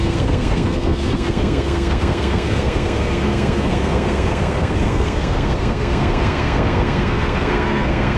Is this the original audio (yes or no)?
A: no